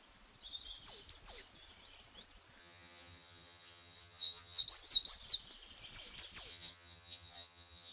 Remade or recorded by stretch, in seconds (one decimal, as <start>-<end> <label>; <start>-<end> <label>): 0.0-2.6 recorded; 2.6-4.6 remade; 4.6-6.5 recorded; 6.5-7.9 remade